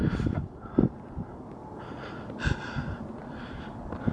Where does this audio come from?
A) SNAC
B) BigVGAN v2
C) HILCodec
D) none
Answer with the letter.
D